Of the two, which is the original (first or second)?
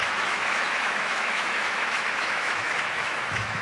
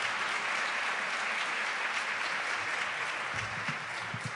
second